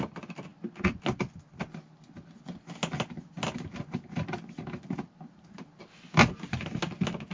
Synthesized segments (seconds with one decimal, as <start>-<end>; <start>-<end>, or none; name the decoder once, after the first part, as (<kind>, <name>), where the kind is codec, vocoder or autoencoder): none